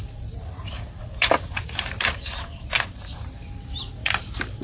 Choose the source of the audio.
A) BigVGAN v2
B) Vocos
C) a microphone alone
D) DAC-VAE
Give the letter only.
A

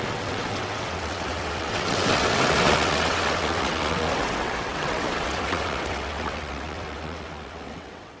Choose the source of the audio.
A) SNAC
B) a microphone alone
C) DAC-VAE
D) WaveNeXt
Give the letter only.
D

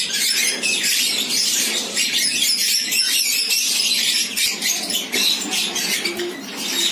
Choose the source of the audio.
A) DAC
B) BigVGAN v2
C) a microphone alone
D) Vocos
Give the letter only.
B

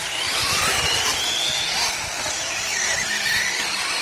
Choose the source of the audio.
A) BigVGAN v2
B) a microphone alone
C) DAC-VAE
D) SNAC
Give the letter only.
B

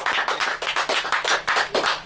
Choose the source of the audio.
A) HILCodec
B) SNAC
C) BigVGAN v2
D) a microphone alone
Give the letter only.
C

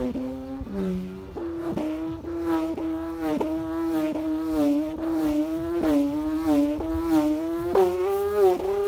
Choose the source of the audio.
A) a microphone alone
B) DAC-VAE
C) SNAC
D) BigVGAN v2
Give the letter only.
A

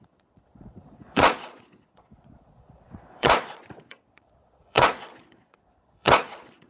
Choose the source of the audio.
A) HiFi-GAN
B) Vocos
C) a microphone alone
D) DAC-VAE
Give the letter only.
B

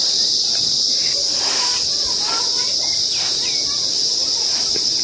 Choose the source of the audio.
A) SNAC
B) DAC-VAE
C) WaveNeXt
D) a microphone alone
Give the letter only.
D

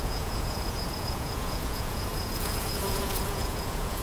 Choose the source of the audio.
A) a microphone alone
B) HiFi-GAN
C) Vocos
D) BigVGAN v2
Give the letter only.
C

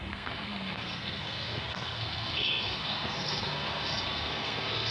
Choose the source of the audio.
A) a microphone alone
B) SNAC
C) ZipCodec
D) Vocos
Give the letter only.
B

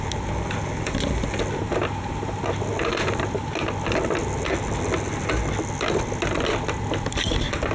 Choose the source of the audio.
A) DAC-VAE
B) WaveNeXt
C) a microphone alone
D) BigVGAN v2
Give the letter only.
C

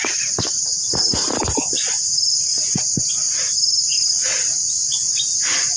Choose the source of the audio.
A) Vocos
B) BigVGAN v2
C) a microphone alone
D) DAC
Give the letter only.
C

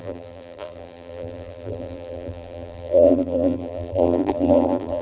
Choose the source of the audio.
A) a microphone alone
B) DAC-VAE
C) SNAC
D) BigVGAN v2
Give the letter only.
D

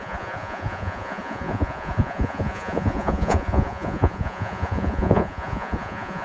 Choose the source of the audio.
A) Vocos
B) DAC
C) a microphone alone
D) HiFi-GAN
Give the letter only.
A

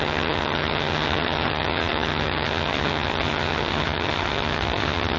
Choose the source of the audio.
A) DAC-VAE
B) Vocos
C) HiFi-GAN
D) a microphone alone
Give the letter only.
C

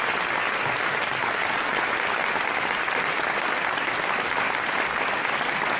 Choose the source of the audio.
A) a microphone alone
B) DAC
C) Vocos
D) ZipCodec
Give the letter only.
A